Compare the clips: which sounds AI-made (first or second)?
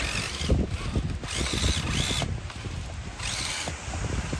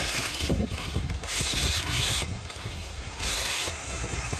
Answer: second